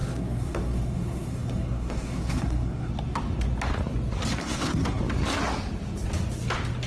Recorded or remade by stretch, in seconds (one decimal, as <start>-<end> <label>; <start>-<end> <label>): 0.0-2.9 remade; 2.9-4.4 recorded; 4.4-5.0 remade; 5.0-6.9 recorded